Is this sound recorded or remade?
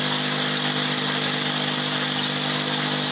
recorded